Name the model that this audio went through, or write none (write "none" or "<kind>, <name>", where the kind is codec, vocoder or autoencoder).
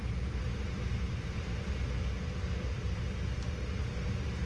none